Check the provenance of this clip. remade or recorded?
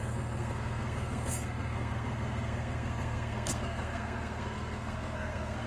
remade